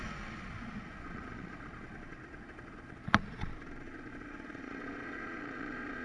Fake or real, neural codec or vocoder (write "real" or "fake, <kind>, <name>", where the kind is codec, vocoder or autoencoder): fake, vocoder, Vocos